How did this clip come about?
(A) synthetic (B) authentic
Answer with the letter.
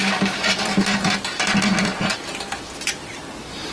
B